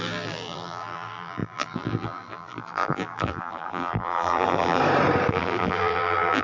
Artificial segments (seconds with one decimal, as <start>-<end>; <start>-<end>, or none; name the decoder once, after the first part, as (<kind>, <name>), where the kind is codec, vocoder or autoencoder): 0.0-4.8 (vocoder, BigVGAN v2); 5.3-6.4